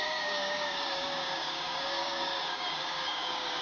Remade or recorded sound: remade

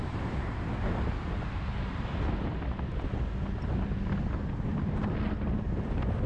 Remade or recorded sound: recorded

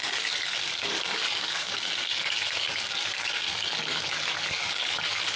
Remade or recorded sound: remade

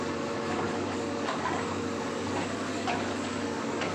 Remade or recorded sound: remade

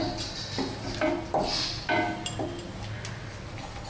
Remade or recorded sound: recorded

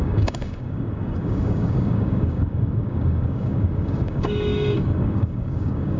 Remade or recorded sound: remade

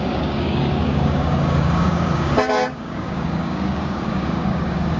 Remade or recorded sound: remade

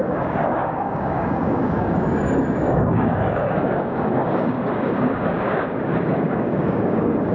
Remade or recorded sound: remade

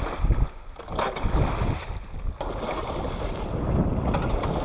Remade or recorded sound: recorded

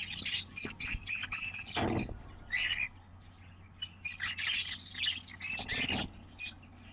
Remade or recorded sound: recorded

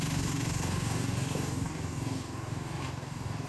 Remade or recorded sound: remade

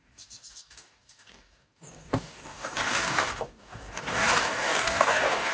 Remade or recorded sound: remade